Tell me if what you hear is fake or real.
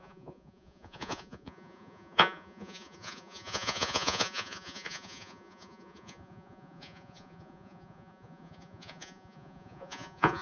fake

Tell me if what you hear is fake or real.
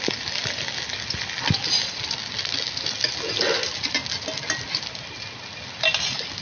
real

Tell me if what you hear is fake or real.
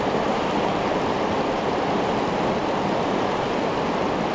real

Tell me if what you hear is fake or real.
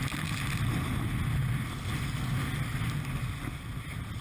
real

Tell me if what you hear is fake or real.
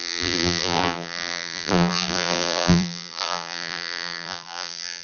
fake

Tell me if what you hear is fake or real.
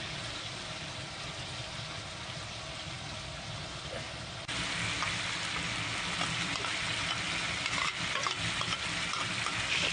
fake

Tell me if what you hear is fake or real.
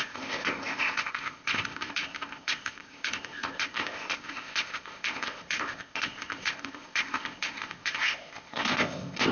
fake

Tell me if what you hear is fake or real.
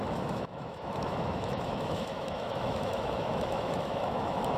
fake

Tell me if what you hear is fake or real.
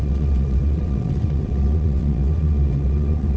fake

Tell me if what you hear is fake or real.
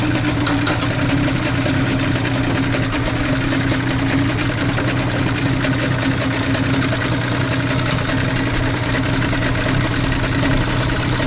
real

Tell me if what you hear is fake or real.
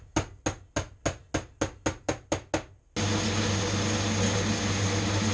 real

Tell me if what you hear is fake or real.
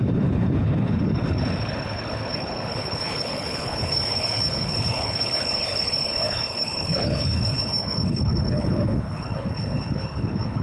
fake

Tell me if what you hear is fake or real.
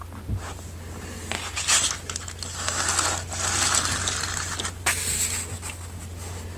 real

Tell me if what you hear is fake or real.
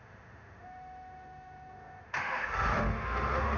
fake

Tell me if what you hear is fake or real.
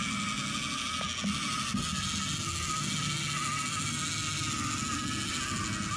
real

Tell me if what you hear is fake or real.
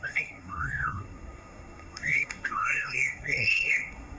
fake